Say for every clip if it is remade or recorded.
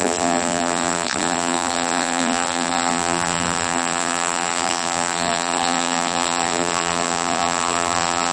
remade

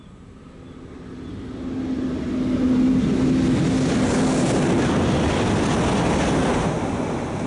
recorded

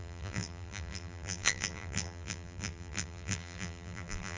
remade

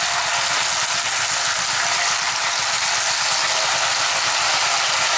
recorded